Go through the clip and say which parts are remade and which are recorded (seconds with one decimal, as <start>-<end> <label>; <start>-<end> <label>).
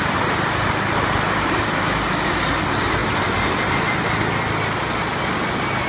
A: 0.0-5.9 recorded